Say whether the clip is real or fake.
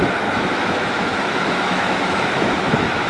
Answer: fake